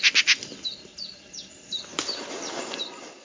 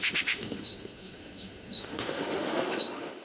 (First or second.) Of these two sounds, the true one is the first